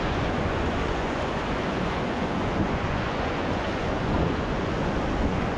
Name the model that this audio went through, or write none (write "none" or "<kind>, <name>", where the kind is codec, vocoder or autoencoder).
vocoder, Vocos